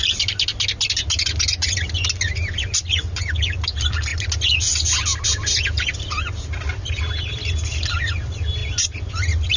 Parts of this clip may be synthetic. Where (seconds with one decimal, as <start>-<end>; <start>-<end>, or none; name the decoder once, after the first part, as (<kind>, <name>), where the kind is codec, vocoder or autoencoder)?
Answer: 2.9-4.1 (vocoder, BigVGAN v2); 6.5-8.6; 9.1-9.6